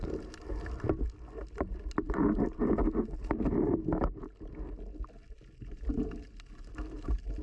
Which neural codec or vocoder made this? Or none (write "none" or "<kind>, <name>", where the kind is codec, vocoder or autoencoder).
none